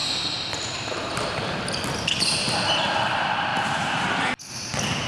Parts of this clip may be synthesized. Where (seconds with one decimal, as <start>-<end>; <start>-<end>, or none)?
3.5-4.3